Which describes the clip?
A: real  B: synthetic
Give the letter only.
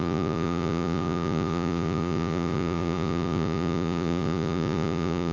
B